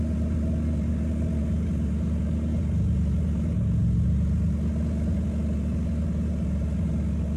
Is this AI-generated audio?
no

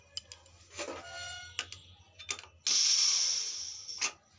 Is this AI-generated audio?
no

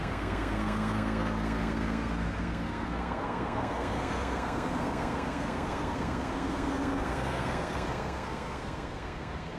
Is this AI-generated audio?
yes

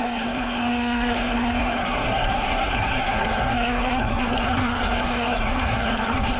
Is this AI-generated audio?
yes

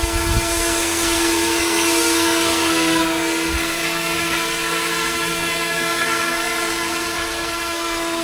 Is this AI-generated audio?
yes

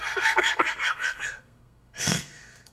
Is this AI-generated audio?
yes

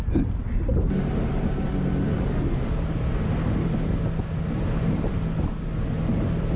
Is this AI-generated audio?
no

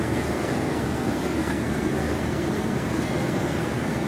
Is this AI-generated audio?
yes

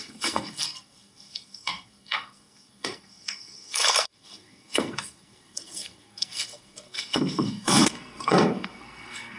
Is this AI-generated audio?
yes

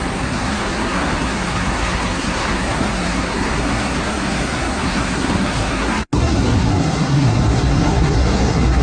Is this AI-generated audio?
yes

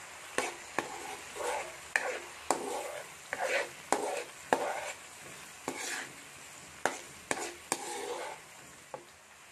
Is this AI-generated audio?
no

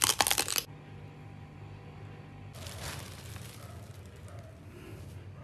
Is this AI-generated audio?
no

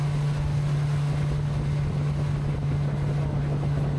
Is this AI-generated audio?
no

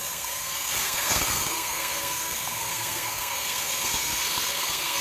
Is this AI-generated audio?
yes